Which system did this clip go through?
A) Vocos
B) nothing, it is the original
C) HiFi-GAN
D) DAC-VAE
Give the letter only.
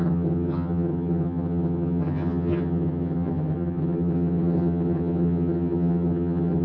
C